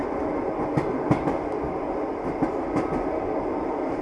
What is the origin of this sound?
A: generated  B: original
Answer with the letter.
B